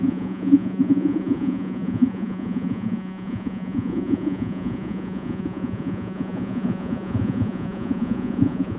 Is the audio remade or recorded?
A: remade